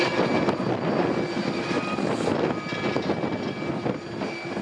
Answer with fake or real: real